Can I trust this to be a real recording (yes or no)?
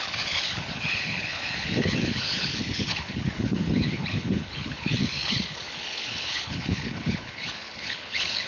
no